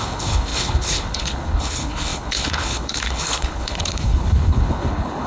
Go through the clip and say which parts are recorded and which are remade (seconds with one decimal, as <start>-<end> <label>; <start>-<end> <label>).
0.0-5.3 remade